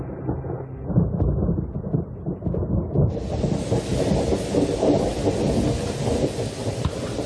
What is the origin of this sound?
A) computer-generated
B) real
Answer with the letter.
B